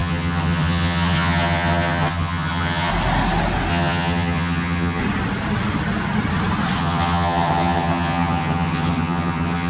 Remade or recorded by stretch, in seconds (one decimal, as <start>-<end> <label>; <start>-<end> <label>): 0.0-2.9 remade; 2.9-3.7 recorded; 3.7-5.0 remade; 5.0-6.8 recorded; 6.8-9.7 remade